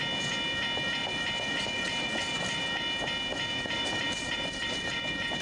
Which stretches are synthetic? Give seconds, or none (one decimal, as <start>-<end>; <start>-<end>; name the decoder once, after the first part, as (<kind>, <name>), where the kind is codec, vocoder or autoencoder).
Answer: 1.0-2.6 (vocoder, BigVGAN v2); 3.3-4.9